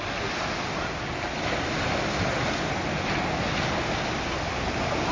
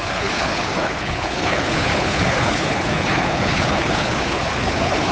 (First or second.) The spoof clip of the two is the second